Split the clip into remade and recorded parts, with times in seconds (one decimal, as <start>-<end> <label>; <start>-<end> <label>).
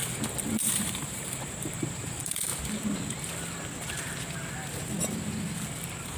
0.0-0.6 recorded; 0.6-2.5 remade; 2.5-6.2 recorded